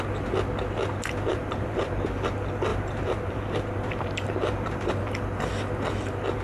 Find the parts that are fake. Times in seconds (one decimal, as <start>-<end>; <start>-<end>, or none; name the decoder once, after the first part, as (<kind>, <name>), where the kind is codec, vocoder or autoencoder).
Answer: 1.3-1.9 (vocoder, BigVGAN v2); 2.7-5.1